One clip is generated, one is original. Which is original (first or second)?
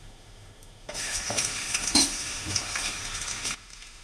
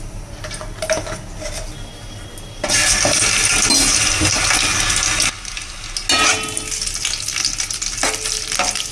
second